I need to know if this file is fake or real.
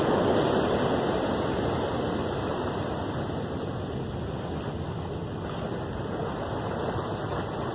real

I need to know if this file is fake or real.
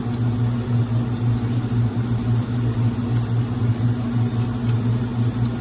real